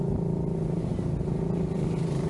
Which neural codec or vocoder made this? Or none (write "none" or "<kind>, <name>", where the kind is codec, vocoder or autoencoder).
none